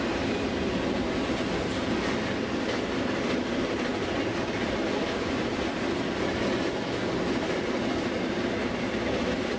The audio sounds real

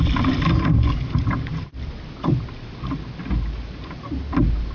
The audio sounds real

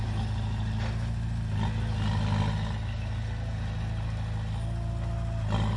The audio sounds real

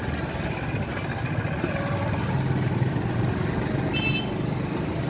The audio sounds real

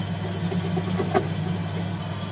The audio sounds real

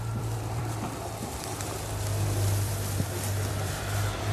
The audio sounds fake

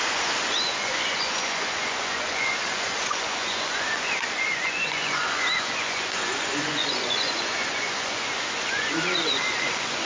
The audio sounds fake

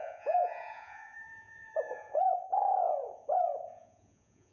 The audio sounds fake